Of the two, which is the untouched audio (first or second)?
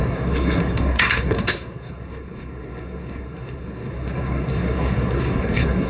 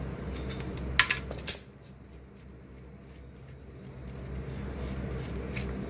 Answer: second